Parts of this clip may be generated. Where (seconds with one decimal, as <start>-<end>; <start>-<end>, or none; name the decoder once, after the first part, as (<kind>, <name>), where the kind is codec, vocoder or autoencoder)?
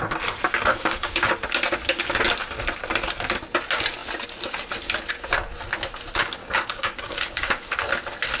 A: 0.7-1.3 (codec, DAC); 6.4-7.7